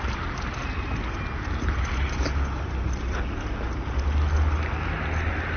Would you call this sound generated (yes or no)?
no